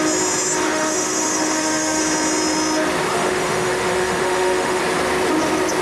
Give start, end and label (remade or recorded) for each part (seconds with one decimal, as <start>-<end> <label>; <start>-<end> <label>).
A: 0.0-0.6 recorded; 0.6-2.0 remade; 2.0-3.1 recorded; 3.1-4.8 remade; 4.8-5.8 recorded